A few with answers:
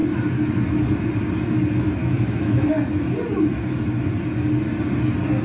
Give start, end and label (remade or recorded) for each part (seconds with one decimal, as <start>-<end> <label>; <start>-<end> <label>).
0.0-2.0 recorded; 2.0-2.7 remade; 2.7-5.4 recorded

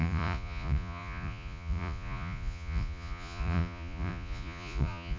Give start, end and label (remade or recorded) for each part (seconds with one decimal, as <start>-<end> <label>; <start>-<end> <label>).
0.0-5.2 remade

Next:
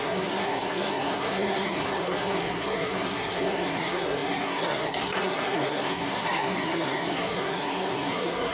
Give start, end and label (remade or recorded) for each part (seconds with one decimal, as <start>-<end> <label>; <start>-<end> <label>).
0.0-8.5 remade

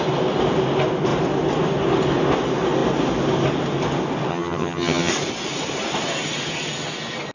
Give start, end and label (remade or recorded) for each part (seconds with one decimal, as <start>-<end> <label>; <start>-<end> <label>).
0.0-4.3 recorded; 4.3-5.1 remade; 5.1-7.3 recorded